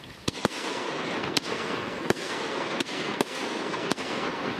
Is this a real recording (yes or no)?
no